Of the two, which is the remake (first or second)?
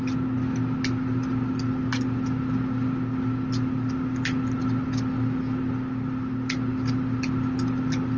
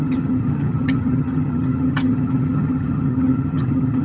second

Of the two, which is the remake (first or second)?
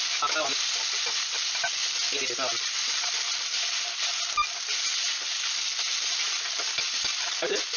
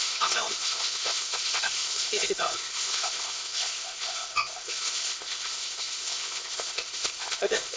second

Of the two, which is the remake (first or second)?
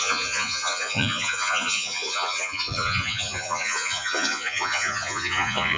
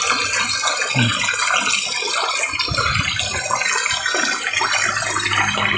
first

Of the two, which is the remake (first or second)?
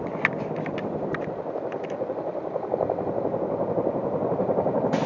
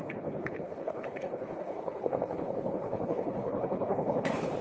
second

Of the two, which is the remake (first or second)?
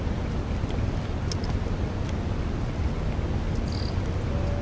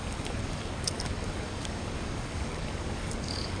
second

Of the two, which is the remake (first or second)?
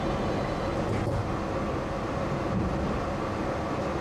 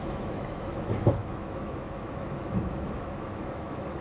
second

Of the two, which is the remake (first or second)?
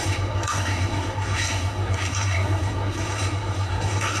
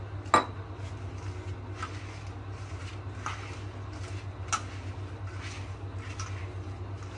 first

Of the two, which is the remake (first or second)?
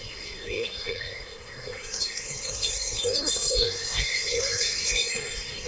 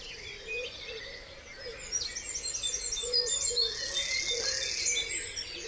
first